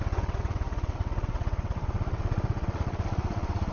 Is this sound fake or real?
fake